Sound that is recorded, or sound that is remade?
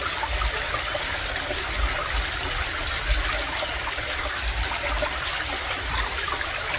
recorded